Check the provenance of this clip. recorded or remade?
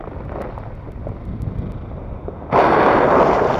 recorded